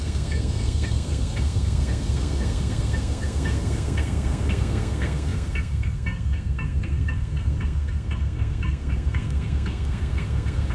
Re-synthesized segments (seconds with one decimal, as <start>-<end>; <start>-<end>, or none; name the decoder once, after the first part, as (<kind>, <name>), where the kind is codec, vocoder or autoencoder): 0.0-10.7 (codec, SNAC)